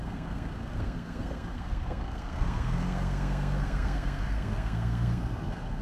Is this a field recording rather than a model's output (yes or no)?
no